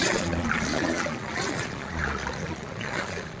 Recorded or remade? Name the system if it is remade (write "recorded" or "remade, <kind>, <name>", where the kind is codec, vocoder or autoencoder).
remade, vocoder, Vocos